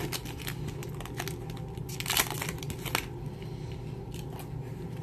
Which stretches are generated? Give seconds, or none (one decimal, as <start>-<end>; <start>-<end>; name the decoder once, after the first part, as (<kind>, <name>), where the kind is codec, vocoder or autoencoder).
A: none